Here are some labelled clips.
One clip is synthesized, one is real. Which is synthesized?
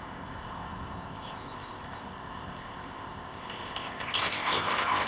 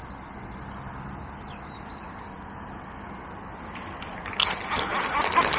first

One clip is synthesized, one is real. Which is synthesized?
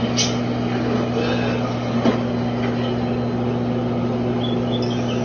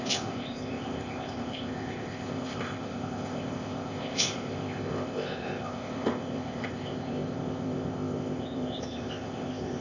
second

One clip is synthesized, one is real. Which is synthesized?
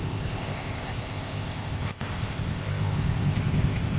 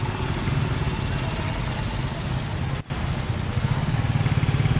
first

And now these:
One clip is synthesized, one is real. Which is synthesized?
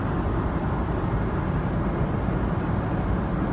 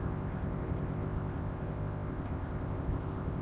second